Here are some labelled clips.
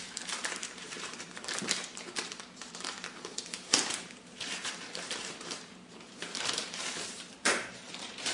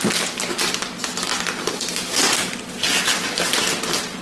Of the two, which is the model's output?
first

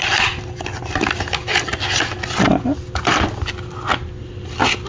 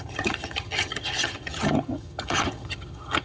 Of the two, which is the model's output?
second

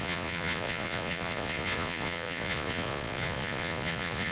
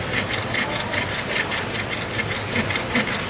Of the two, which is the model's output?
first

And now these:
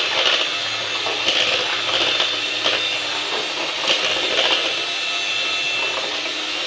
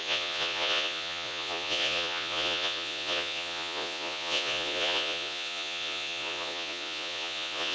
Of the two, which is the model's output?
second